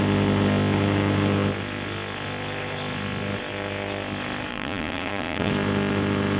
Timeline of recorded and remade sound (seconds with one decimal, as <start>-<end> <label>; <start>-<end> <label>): 0.0-4.5 recorded; 4.5-5.5 remade; 5.5-6.4 recorded